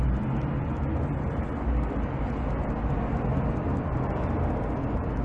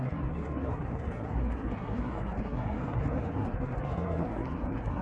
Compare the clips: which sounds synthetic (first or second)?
second